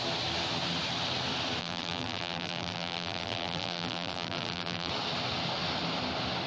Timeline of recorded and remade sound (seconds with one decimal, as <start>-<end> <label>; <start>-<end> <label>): 0.0-1.6 recorded; 1.6-4.9 remade; 4.9-6.5 recorded